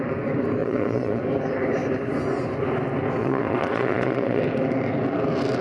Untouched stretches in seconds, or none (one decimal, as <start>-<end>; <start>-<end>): 0.0-0.6; 1.2-3.2; 4.4-5.6